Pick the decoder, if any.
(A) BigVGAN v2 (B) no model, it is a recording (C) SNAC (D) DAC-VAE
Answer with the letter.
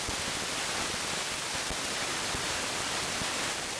B